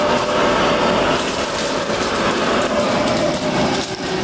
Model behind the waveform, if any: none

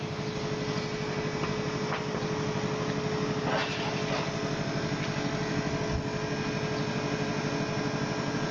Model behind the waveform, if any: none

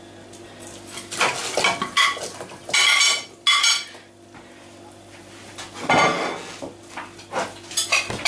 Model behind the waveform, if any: none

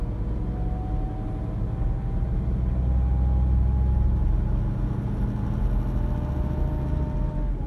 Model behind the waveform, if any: none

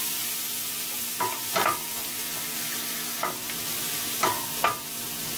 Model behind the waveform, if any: none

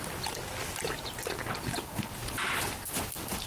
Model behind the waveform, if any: none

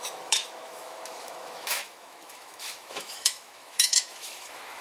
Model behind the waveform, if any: autoencoder, DAC-VAE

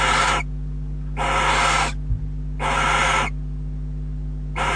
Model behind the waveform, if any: none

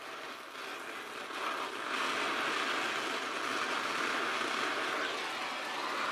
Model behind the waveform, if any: none